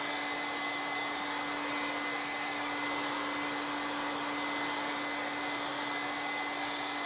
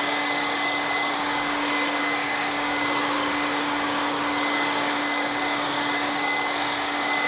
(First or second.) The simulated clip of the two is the second